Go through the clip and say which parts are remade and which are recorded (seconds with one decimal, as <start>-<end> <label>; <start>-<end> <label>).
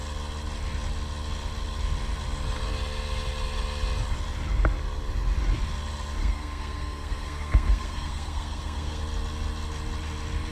0.0-6.2 recorded; 6.2-9.0 remade; 9.0-10.5 recorded